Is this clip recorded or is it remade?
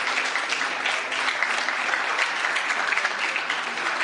recorded